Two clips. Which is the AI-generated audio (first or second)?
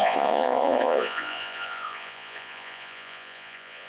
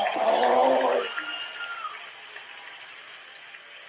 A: first